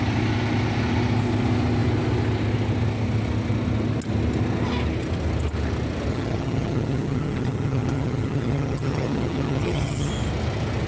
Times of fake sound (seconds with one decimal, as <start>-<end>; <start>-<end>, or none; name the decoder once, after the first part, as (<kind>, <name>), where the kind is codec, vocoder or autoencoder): 6.1-10.1 (vocoder, HiFi-GAN)